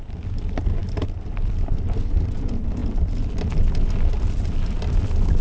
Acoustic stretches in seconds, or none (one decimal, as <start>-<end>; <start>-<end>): 0.0-5.4